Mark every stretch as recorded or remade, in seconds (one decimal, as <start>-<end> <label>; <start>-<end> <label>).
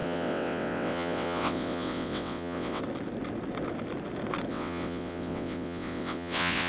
0.0-2.8 remade; 2.8-4.5 recorded; 4.5-6.7 remade